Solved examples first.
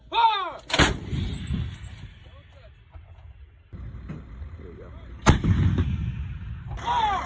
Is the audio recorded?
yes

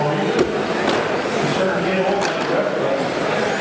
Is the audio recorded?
yes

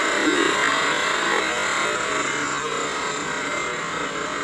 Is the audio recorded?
yes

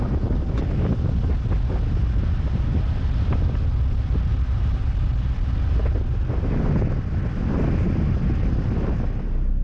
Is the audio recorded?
yes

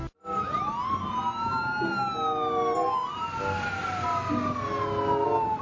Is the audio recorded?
yes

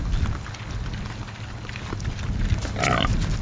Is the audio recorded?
yes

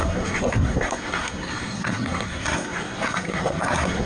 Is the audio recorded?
no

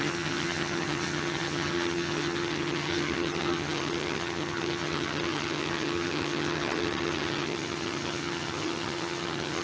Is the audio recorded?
no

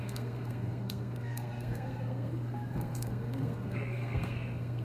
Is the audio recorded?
no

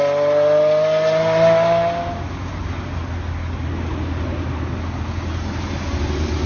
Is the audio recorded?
yes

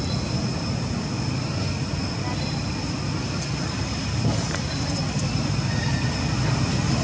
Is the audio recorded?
yes